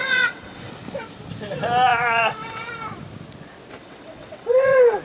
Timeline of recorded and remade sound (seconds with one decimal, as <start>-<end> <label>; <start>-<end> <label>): 0.0-0.7 remade; 0.7-1.9 recorded; 1.9-2.7 remade; 2.7-3.8 recorded; 3.8-5.0 remade